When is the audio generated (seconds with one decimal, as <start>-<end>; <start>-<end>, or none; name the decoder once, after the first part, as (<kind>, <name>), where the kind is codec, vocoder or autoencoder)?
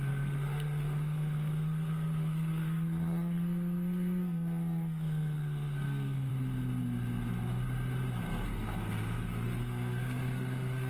0.0-6.3 (codec, SNAC); 8.2-10.9